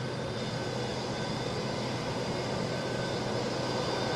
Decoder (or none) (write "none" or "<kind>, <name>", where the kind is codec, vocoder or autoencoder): none